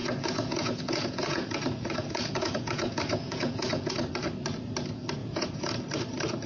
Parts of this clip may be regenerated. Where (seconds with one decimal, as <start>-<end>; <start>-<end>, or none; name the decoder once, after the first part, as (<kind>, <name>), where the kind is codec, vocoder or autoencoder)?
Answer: 0.0-3.9 (vocoder, Vocos); 5.2-5.7